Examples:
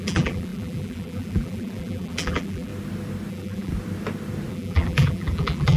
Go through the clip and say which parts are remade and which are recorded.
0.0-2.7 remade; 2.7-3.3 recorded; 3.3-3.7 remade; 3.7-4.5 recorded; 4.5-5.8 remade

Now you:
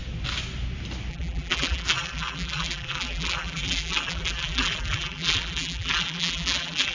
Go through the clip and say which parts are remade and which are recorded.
0.0-1.1 recorded; 1.1-6.9 remade

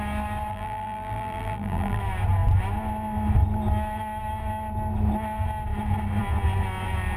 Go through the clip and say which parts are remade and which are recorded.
0.0-0.5 recorded; 0.5-2.0 remade; 2.0-7.2 recorded

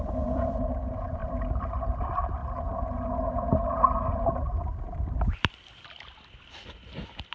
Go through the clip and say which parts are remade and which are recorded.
0.0-1.2 remade; 1.2-1.7 recorded; 1.7-2.4 remade; 2.4-4.8 recorded; 4.8-7.3 remade

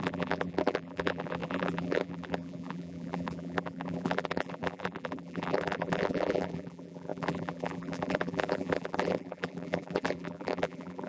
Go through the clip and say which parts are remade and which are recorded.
0.0-11.1 remade

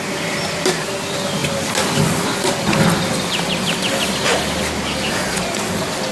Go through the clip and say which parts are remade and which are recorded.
0.0-6.1 recorded

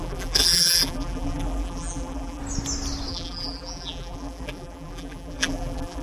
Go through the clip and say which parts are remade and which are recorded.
0.0-2.4 remade; 2.4-3.1 recorded; 3.1-6.0 remade

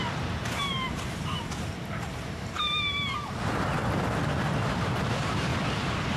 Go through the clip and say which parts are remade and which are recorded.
0.0-3.8 remade; 3.8-4.7 recorded; 4.7-5.5 remade; 5.5-6.2 recorded